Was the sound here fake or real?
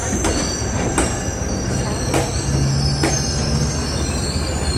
real